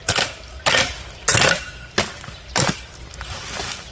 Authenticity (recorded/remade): recorded